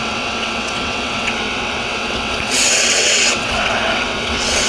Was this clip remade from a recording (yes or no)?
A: yes